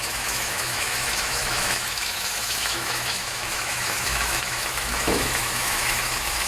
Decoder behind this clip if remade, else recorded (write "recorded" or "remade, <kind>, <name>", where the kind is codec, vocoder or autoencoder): remade, autoencoder, DAC-VAE